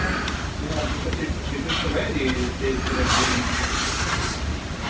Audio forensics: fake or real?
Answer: real